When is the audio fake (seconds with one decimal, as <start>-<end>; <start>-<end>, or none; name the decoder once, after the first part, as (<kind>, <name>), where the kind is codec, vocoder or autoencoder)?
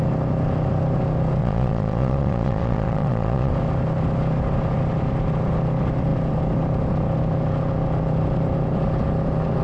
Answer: 1.4-3.5 (vocoder, Vocos)